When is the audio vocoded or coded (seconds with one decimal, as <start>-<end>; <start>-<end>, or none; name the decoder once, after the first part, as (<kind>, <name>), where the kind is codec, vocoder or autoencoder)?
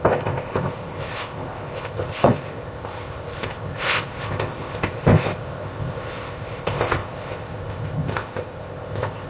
0.0-9.3 (codec, ZipCodec)